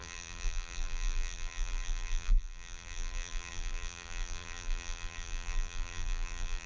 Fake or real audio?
fake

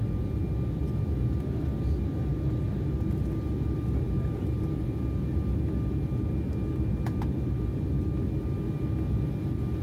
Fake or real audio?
real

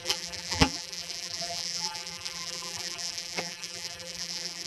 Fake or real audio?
fake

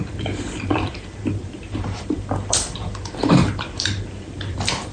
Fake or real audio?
fake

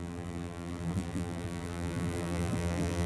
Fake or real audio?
fake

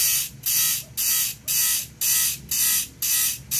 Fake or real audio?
real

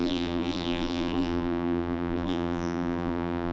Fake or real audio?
fake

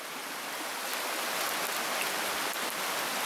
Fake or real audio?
real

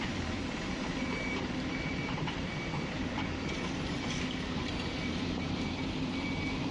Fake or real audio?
fake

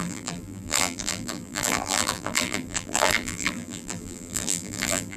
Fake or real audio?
fake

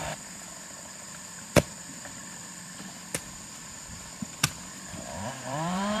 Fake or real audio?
fake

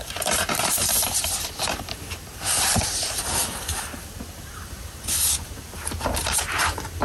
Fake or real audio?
fake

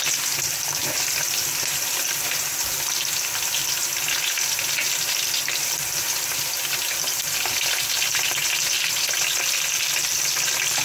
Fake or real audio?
real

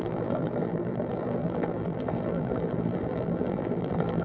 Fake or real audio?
fake